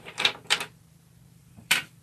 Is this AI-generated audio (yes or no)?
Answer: yes